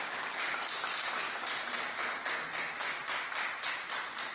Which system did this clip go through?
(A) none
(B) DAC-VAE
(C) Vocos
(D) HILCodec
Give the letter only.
A